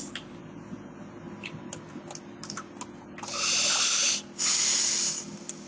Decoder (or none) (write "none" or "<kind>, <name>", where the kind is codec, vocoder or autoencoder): none